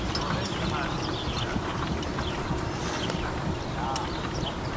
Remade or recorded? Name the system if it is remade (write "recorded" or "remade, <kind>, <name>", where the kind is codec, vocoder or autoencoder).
recorded